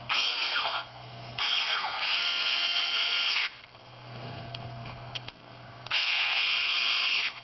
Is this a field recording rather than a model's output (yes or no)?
no